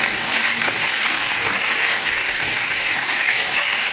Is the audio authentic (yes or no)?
no